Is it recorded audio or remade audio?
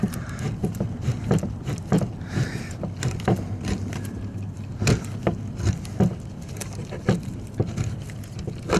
recorded